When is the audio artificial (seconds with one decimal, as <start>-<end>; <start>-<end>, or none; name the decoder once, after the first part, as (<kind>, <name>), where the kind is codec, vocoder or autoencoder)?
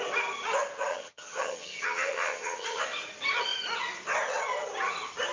0.9-2.8 (vocoder, HiFi-GAN)